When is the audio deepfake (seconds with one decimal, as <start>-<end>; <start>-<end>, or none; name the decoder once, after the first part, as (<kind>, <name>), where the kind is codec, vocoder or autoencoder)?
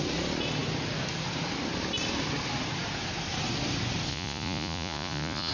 4.1-5.5 (vocoder, Vocos)